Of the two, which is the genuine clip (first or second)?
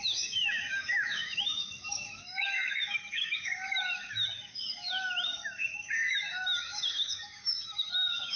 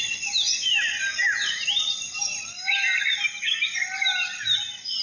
second